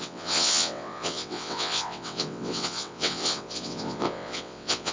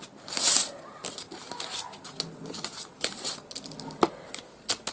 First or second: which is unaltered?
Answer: second